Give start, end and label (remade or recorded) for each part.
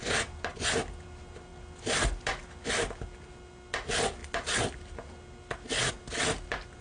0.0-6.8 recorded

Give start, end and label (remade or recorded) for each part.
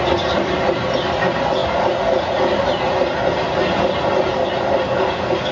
0.0-5.5 recorded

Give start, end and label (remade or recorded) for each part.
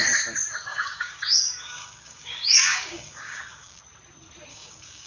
0.0-0.7 recorded; 0.7-3.8 remade; 3.8-4.5 recorded; 4.5-5.1 remade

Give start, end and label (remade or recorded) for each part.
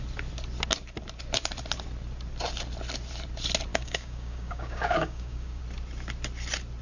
0.0-3.7 recorded; 3.7-5.6 remade; 5.6-6.8 recorded